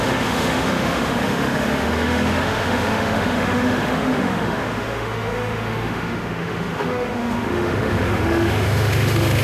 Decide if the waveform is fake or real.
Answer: fake